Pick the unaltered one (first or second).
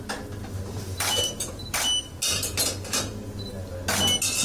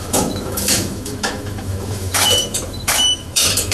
first